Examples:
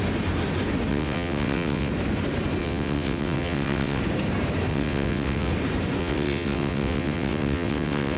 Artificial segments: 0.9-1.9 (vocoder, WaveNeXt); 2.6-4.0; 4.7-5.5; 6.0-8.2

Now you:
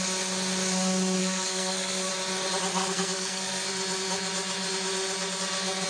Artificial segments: 1.2-2.1 (codec, SNAC); 2.7-3.7

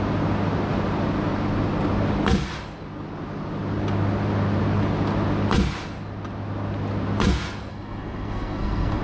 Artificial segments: 7.7-9.0 (codec, SNAC)

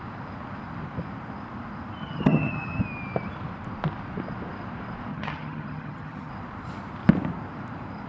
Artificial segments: 2.0-2.8 (vocoder, HiFi-GAN); 5.1-6.3

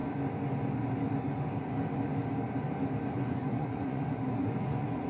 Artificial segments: 3.1-5.1 (vocoder, Vocos)